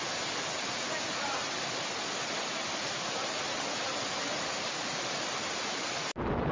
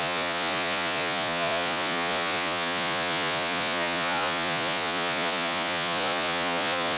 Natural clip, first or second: first